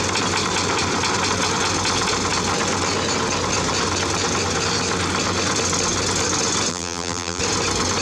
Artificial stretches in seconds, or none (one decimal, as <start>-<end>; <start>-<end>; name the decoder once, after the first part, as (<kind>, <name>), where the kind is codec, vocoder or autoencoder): 6.7-7.4 (vocoder, BigVGAN v2)